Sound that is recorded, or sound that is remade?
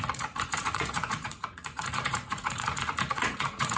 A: remade